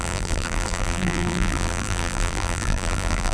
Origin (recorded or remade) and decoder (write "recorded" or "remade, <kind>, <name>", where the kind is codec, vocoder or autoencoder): remade, vocoder, BigVGAN v2